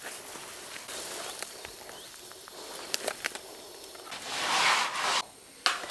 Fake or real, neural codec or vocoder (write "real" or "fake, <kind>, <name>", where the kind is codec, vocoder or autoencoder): real